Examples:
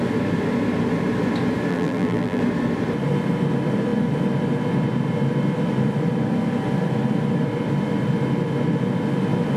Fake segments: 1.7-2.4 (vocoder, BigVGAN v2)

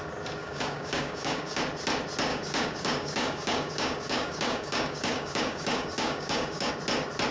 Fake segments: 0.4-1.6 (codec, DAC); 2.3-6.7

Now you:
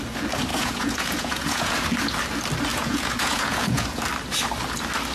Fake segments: 0.5-1.7 (vocoder, Vocos); 2.7-4.0

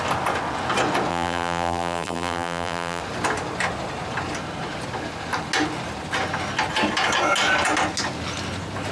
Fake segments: 1.1-3.0 (vocoder, BigVGAN v2)

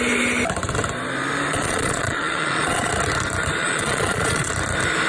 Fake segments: 1.5-2.9 (vocoder, Vocos); 3.6-4.5